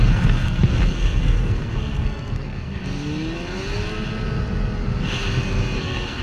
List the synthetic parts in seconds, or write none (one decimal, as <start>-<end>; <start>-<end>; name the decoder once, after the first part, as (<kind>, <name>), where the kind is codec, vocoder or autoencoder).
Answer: 0.0-2.8 (codec, SNAC); 5.8-6.2